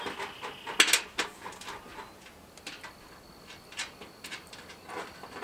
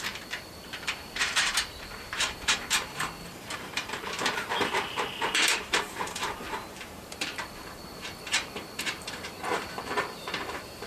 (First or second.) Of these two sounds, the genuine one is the first